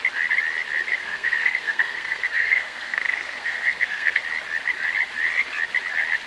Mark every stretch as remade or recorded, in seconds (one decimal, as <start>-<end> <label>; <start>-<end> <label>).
0.0-1.0 recorded; 1.0-4.2 remade; 4.2-6.3 recorded

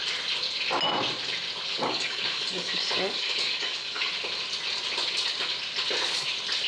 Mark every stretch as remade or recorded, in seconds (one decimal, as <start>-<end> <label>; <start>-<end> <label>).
0.0-1.7 recorded; 1.7-4.1 remade; 4.1-6.7 recorded

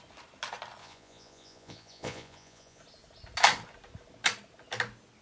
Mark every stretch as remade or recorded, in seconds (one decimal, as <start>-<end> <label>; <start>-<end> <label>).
0.0-0.8 recorded; 0.8-2.8 remade; 2.8-5.2 recorded

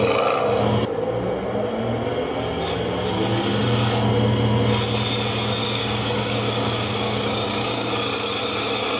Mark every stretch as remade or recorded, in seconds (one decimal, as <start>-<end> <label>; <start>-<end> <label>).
0.0-5.6 recorded; 5.6-7.9 remade; 7.9-9.0 recorded

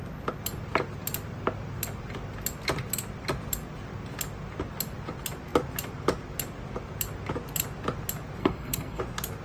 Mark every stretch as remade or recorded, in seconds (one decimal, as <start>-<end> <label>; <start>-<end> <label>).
0.0-8.4 recorded; 8.4-9.0 remade; 9.0-9.4 recorded